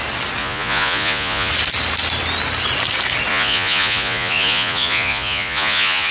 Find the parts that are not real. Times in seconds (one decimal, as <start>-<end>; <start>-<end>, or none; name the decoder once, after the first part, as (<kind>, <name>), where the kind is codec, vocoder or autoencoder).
0.4-1.5 (vocoder, Vocos); 3.3-6.1